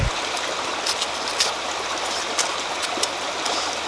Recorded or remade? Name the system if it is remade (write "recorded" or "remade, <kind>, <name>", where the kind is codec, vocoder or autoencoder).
recorded